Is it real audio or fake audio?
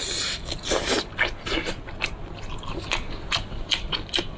real